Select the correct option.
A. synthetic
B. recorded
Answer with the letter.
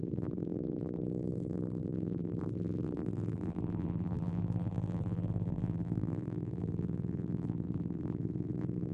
A